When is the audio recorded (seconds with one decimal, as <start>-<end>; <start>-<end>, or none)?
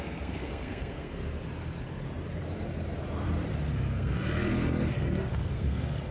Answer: 1.2-3.7